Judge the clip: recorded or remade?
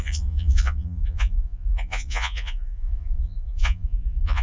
remade